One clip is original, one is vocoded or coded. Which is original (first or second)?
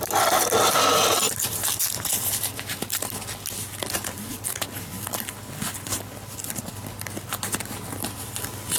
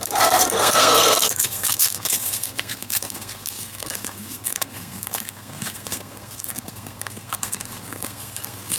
first